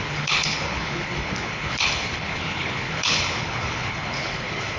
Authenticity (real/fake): fake